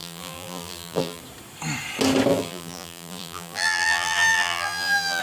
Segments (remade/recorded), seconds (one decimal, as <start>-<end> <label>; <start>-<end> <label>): 0.0-1.2 remade; 1.2-2.3 recorded; 2.3-5.2 remade